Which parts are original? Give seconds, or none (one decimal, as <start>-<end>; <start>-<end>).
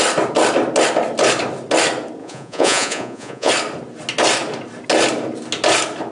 0.0-2.2; 3.5-6.1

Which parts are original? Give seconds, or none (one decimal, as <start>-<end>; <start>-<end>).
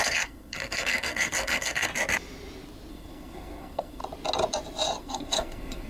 1.9-2.9; 4.0-5.0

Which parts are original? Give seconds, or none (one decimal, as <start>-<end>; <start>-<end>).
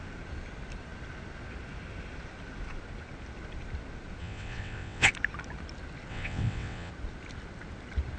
0.0-4.2; 5.1-6.1; 6.9-8.2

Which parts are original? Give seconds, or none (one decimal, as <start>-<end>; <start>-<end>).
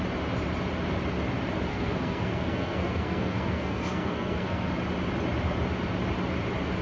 0.0-1.7; 4.7-6.8